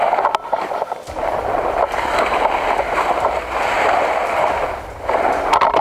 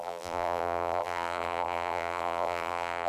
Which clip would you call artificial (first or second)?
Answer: second